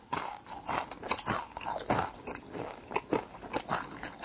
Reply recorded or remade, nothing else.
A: recorded